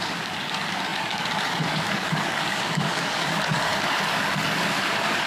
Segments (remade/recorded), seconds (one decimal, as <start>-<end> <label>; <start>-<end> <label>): 0.0-5.3 remade

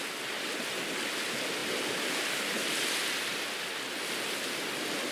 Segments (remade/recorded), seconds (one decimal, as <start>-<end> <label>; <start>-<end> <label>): 0.0-5.1 recorded

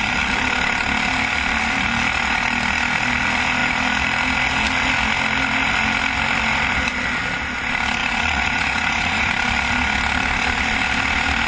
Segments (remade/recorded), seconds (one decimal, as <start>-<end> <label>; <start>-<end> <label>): 0.0-8.0 recorded; 8.0-9.3 remade; 9.3-11.5 recorded

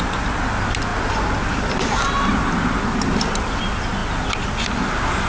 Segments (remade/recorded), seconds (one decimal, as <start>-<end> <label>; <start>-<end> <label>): 0.0-5.3 recorded

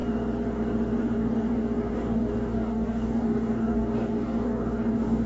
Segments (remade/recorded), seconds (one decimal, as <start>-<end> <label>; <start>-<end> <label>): 0.0-1.0 recorded; 1.0-5.3 remade

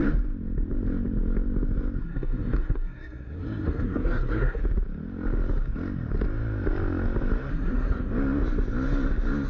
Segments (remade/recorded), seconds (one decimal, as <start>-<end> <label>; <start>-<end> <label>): 0.0-2.0 recorded; 2.0-4.6 remade; 4.6-7.5 recorded; 7.5-8.1 remade; 8.1-9.5 recorded

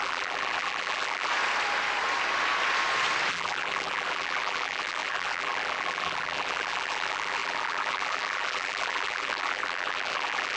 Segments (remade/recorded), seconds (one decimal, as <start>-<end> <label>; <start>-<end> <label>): 0.0-1.3 remade; 1.3-3.3 recorded; 3.3-10.6 remade

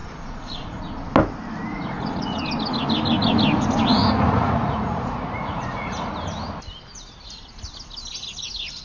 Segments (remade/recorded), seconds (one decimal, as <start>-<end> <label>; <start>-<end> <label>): 0.0-0.8 remade; 0.8-1.7 recorded; 1.7-2.4 remade; 2.4-3.9 recorded; 3.9-6.1 remade; 6.1-8.8 recorded